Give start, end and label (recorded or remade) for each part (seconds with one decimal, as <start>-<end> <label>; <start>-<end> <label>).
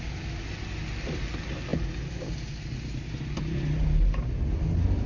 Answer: 0.0-5.1 recorded